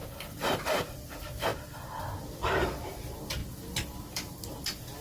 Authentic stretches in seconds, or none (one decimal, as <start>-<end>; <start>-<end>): 3.4-4.1